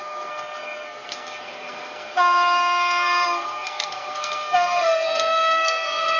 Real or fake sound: fake